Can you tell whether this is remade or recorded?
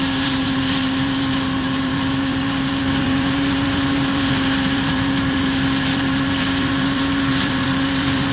remade